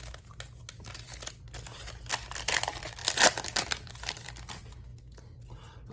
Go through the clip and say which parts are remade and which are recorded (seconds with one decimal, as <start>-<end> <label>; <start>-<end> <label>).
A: 0.0-5.9 recorded